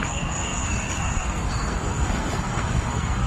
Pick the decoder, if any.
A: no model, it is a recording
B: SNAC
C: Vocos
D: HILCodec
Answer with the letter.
B